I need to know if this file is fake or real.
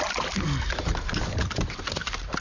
real